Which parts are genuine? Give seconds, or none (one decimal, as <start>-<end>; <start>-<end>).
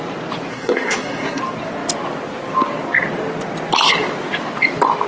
0.0-0.5; 1.4-5.1